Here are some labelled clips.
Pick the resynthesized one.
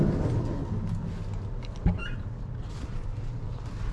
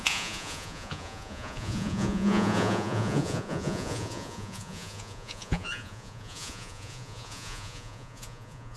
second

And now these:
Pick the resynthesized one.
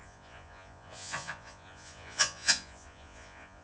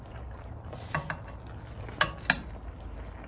first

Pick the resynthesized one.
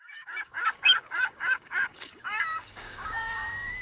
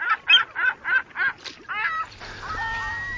first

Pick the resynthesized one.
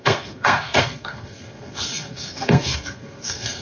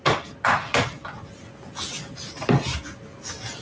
first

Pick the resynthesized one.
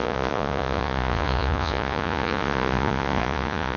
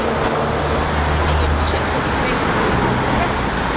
first